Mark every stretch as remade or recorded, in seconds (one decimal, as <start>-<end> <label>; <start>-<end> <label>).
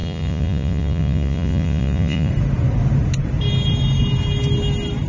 0.0-2.3 remade; 2.3-5.1 recorded